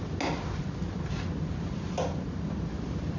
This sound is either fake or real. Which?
real